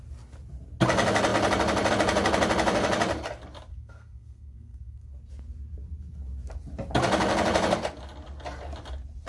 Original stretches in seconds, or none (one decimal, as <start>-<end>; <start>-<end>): 0.0-3.7; 5.1-9.3